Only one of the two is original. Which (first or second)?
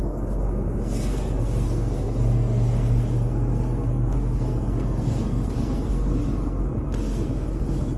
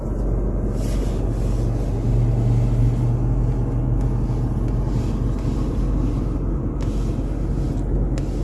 second